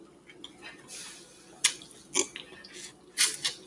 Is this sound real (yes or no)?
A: yes